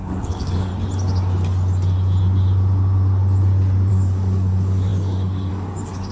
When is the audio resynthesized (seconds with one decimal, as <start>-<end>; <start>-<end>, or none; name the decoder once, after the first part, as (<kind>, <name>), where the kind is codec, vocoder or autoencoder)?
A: 0.0-0.7 (codec, DAC); 3.9-6.1